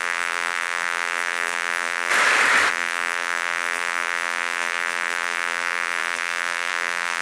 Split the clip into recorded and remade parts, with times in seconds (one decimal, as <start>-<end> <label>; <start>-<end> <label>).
0.0-2.1 remade; 2.1-2.7 recorded; 2.7-7.2 remade